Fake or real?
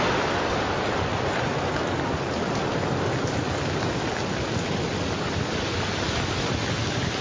real